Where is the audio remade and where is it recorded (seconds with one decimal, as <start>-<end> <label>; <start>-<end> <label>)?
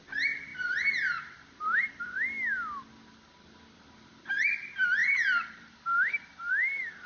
0.0-0.5 recorded; 0.5-1.9 remade; 1.9-5.0 recorded; 5.0-6.5 remade; 6.5-7.1 recorded